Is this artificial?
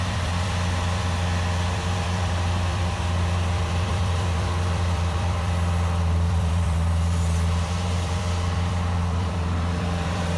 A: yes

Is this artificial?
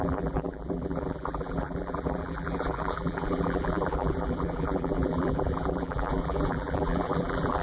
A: yes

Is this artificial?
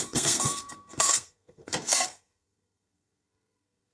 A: yes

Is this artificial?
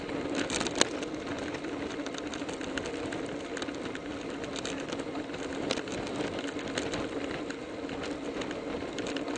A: no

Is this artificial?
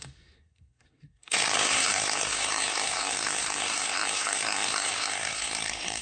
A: yes